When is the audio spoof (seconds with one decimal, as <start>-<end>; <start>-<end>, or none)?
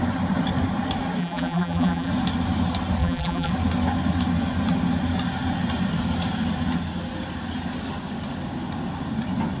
1.2-2.1; 3.0-3.5